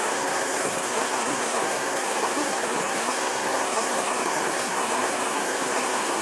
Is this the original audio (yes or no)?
no